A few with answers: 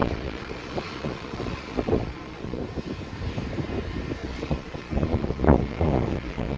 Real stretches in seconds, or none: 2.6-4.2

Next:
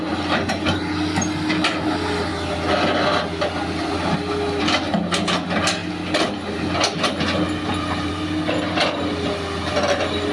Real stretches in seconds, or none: 0.0-10.3

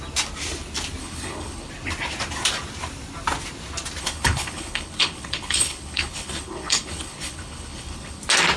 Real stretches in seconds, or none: 0.0-1.0; 1.7-4.0; 8.2-8.6

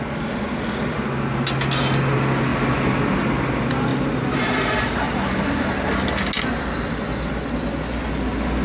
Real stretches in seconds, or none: 0.0-3.9; 5.4-8.6

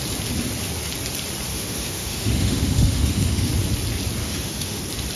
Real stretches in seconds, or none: 0.0-1.5; 3.5-4.2; 4.8-5.2

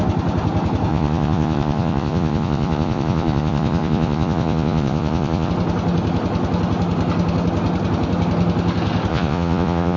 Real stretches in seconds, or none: 0.0-0.9; 5.5-9.1